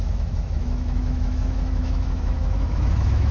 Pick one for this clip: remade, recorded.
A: remade